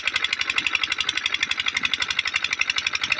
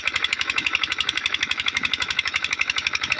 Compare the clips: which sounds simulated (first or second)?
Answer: second